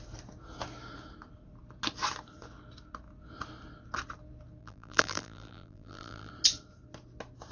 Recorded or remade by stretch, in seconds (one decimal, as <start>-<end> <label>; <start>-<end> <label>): 0.0-4.6 recorded; 4.6-6.3 remade; 6.3-7.5 recorded